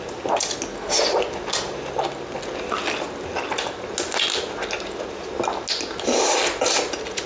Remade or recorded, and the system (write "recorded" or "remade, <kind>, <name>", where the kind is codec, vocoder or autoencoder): recorded